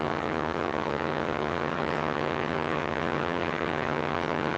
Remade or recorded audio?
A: remade